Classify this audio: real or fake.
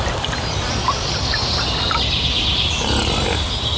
real